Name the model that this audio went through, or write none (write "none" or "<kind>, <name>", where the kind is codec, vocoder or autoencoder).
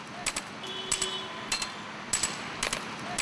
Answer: none